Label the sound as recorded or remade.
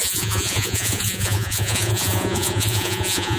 remade